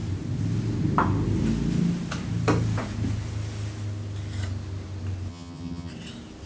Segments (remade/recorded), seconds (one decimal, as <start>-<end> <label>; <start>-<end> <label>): 0.0-5.3 recorded; 5.3-5.9 remade; 5.9-6.5 recorded